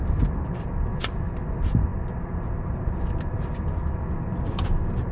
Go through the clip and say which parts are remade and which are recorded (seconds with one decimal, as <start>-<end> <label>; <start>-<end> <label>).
0.0-5.1 recorded